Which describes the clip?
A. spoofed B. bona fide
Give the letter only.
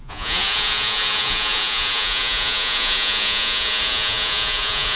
A